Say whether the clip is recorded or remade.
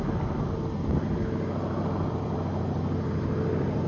remade